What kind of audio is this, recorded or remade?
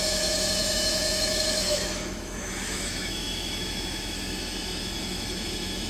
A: remade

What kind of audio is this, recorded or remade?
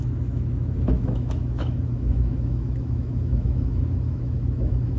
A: remade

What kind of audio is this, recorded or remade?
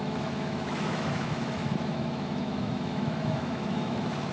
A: remade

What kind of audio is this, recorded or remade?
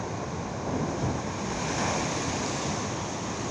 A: recorded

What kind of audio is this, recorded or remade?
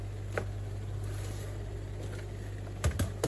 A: recorded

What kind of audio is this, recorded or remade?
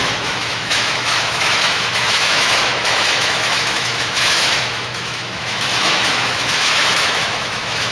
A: remade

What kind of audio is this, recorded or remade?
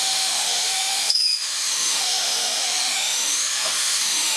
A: remade